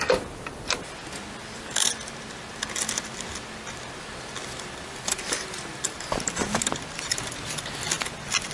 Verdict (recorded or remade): recorded